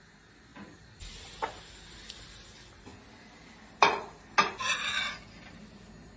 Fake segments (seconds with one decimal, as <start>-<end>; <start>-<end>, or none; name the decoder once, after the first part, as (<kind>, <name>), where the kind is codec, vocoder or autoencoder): none